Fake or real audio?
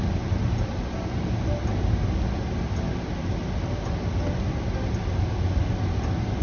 real